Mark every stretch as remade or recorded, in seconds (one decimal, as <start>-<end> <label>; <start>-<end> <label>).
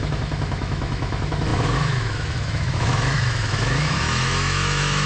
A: 0.0-5.1 remade